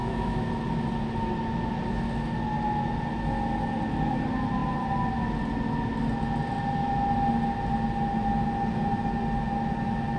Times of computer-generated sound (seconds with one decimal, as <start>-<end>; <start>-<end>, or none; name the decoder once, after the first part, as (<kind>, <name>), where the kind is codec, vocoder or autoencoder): 0.0-0.5 (autoencoder, DAC-VAE)